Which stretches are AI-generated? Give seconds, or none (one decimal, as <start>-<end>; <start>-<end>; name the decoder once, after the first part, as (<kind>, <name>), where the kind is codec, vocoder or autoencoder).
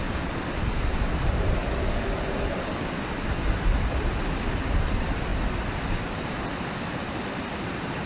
0.0-1.6 (vocoder, BigVGAN v2); 4.6-5.3; 7.6-8.1